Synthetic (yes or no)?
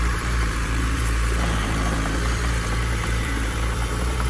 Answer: yes